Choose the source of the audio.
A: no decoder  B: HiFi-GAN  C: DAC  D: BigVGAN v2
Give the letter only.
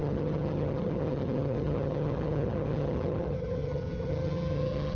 B